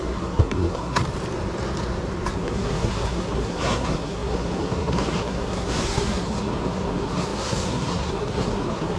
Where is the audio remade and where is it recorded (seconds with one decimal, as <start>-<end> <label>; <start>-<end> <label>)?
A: 0.0-1.0 remade; 1.0-2.3 recorded; 2.3-9.0 remade